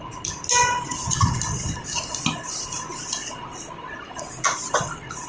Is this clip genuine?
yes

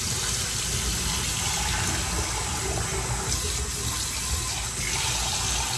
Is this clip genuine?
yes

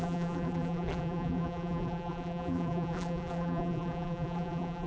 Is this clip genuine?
no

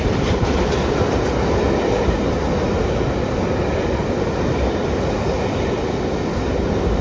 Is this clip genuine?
yes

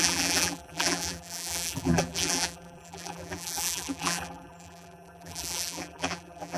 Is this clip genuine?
no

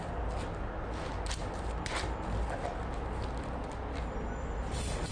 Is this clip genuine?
yes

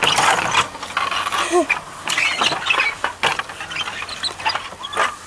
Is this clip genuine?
yes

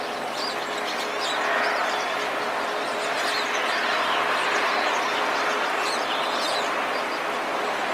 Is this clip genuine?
yes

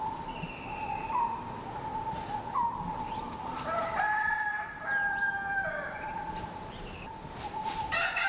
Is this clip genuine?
no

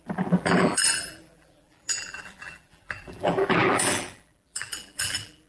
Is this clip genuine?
no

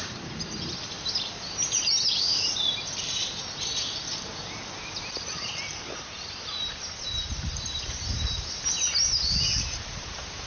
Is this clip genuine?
no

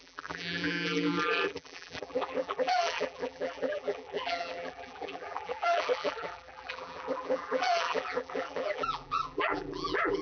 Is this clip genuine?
no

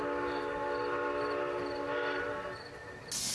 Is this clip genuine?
yes